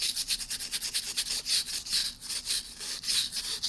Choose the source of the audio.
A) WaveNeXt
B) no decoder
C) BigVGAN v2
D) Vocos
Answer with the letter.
C